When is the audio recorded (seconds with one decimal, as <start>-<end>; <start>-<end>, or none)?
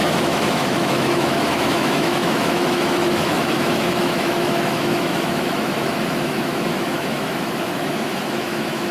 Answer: none